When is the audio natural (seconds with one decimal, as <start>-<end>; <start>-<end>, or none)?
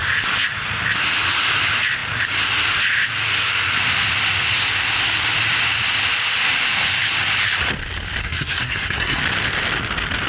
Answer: 0.0-8.2; 9.2-10.3